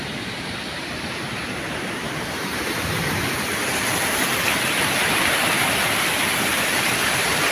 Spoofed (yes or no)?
yes